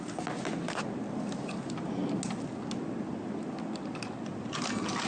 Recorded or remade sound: recorded